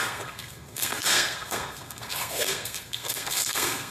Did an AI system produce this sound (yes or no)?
yes